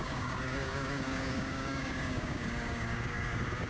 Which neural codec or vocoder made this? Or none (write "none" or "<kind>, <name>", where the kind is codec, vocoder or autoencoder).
codec, DAC